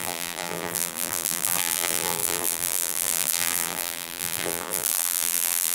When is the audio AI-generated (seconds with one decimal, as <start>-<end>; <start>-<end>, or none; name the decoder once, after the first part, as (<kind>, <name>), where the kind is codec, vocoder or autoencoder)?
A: 0.0-5.7 (vocoder, BigVGAN v2)